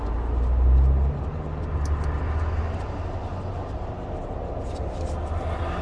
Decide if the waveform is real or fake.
real